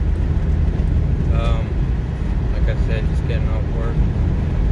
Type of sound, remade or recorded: recorded